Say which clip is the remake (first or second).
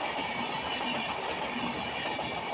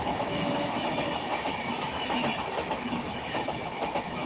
second